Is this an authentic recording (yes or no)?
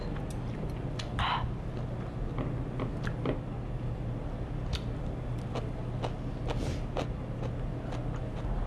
yes